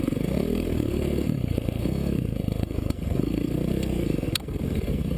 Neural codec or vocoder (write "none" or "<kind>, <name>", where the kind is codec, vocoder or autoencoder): codec, SNAC